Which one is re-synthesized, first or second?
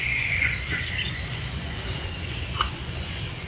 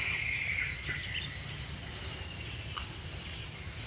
first